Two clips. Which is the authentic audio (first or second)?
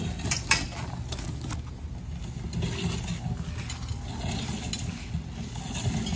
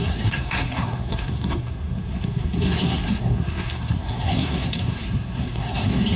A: first